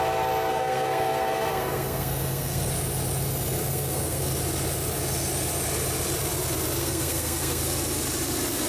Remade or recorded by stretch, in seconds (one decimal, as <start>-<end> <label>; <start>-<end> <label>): 0.0-0.5 recorded; 0.5-2.7 remade; 2.7-3.6 recorded; 3.6-4.2 remade; 4.2-6.8 recorded; 6.8-7.6 remade; 7.6-8.7 recorded